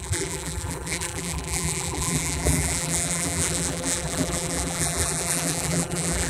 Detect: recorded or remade remade